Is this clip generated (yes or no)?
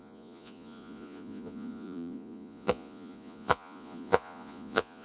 yes